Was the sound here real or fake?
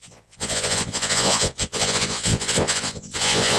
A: fake